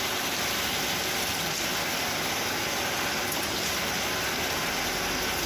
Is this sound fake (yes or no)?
no